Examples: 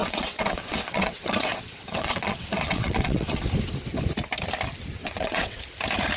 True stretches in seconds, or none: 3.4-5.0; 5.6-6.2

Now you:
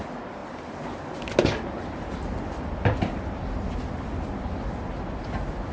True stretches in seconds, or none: 0.0-5.7